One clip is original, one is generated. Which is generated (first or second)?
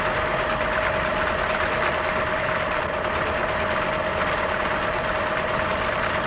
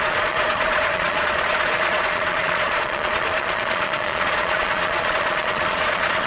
second